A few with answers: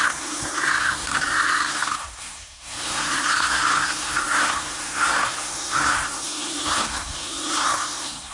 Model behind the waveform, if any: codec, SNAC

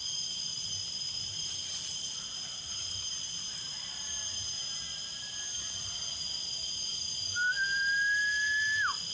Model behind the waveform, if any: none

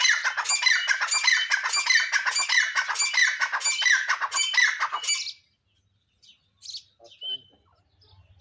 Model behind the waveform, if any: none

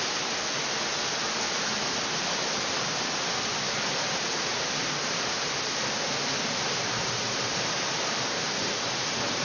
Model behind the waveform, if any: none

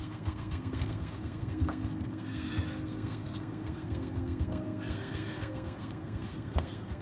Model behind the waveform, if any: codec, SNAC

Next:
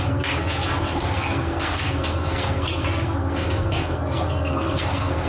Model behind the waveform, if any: codec, SNAC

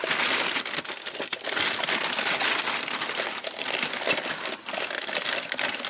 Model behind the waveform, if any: none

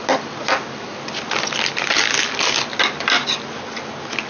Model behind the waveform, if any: none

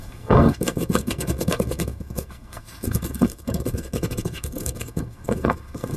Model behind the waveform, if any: codec, SNAC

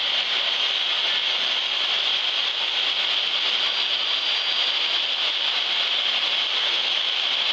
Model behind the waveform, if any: none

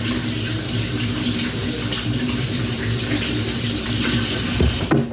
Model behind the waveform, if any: none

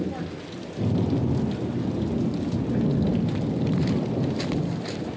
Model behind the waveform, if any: none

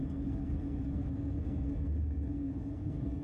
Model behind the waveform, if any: codec, SNAC